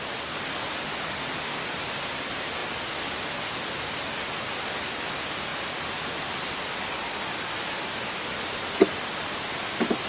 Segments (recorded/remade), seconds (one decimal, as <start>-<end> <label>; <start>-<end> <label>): 0.0-10.1 recorded